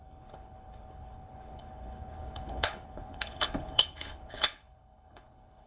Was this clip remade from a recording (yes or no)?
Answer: yes